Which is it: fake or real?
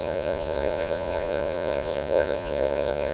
fake